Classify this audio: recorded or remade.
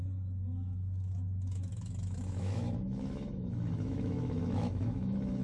remade